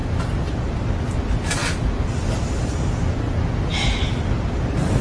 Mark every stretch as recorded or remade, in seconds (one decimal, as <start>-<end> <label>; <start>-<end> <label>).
0.0-5.0 recorded